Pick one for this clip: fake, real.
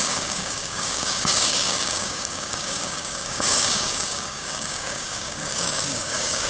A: fake